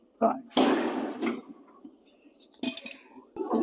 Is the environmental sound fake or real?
real